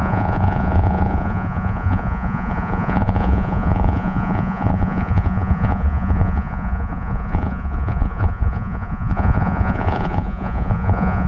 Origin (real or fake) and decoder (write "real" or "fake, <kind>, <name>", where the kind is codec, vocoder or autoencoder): fake, vocoder, Vocos